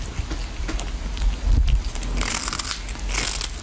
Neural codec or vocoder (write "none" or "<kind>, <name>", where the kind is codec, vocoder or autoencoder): none